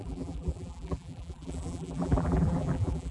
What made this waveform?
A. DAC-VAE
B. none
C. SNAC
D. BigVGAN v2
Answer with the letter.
D